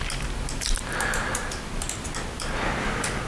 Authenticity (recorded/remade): recorded